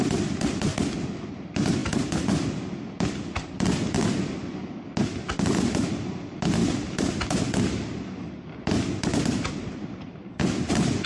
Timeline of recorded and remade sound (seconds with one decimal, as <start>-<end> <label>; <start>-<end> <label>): 0.0-0.7 remade; 0.7-1.2 recorded; 1.2-1.8 remade; 1.8-5.9 recorded; 5.9-6.6 remade; 6.6-10.7 recorded; 10.7-11.1 remade